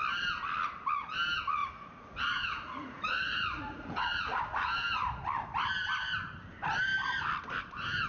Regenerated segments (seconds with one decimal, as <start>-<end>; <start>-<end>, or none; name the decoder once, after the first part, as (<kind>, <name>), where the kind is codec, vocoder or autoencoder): 1.6-4.4 (vocoder, Vocos)

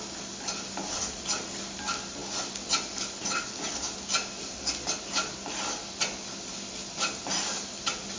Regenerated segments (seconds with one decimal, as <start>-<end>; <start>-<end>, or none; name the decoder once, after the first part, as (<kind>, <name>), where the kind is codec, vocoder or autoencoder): none

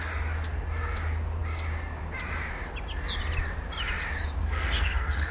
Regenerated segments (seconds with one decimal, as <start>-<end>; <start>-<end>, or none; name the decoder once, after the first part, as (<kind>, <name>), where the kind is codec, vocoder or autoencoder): 4.4-5.3 (codec, SNAC)

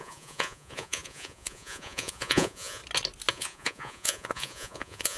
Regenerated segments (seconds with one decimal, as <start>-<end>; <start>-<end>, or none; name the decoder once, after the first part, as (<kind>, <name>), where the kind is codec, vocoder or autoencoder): 0.0-2.8 (vocoder, Vocos); 3.3-5.2